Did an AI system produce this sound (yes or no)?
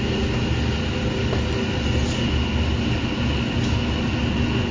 no